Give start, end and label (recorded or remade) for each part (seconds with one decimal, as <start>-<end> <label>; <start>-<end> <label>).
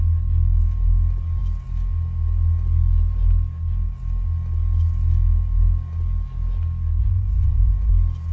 0.0-7.0 recorded; 7.0-7.9 remade; 7.9-8.3 recorded